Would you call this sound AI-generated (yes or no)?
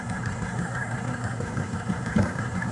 yes